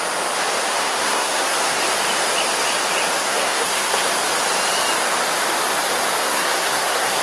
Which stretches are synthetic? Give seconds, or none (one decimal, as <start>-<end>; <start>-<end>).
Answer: 0.8-1.8; 3.2-4.1; 6.2-7.2